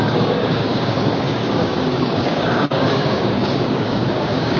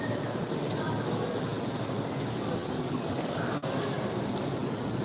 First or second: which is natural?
second